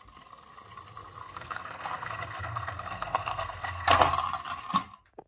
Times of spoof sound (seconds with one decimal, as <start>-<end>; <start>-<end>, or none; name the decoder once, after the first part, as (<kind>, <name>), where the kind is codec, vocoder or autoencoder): 1.2-4.0 (codec, SNAC)